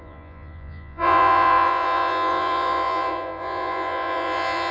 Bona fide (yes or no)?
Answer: no